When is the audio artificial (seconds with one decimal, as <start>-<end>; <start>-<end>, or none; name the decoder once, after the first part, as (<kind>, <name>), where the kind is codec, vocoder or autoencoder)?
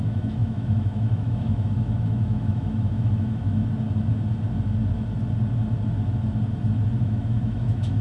0.0-3.6 (autoencoder, DAC-VAE); 7.0-8.0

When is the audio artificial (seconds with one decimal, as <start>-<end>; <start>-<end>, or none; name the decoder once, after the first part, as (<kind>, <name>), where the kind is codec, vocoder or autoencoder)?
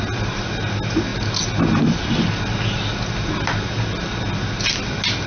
none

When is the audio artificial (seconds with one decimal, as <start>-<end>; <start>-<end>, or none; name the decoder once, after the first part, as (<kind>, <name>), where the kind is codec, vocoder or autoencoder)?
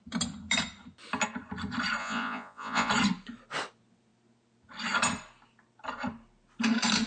2.0-2.9 (vocoder, Vocos)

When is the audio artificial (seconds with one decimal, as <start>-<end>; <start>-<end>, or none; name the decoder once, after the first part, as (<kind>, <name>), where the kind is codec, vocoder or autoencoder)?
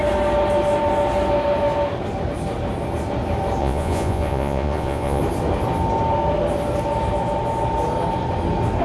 3.6-5.2 (vocoder, Vocos)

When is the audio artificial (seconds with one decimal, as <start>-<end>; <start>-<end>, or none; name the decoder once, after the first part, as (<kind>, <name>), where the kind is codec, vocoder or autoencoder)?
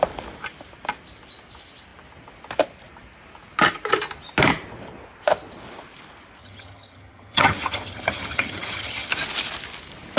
6.4-9.1 (vocoder, HiFi-GAN)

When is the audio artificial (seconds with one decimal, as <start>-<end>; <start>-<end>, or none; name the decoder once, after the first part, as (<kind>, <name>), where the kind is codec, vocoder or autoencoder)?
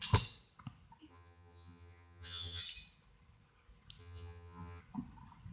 1.1-2.6 (vocoder, HiFi-GAN); 4.0-4.8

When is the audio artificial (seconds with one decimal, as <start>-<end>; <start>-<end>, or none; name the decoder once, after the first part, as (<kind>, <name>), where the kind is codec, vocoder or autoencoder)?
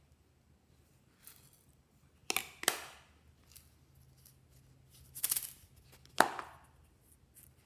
none